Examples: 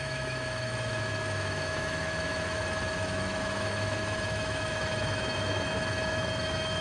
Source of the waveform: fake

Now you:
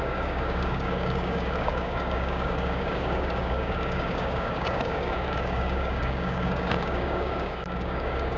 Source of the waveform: fake